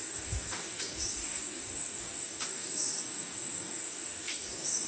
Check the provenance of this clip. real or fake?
fake